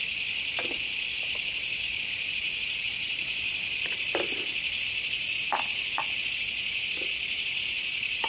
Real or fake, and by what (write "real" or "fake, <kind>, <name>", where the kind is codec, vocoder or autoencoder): real